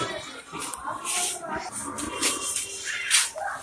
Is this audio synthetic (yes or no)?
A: yes